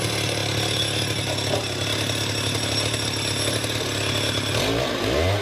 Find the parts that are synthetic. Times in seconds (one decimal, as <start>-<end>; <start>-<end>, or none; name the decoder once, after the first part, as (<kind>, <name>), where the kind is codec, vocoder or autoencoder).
none